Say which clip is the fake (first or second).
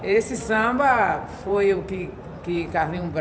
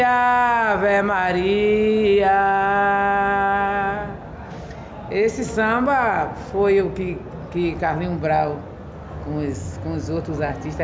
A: first